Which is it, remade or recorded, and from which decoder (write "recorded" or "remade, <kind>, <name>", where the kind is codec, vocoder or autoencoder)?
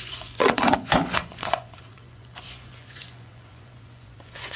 remade, vocoder, Vocos